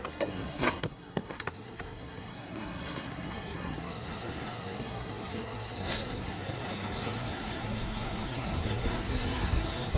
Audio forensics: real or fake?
fake